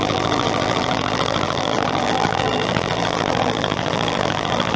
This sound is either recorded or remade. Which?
remade